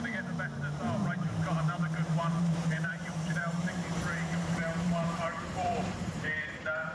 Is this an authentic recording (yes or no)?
no